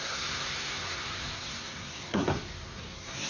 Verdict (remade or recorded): remade